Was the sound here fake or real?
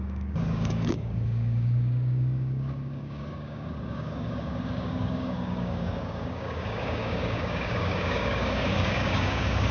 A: fake